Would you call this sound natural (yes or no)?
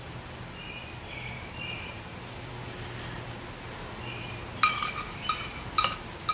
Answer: no